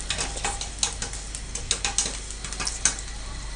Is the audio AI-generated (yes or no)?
no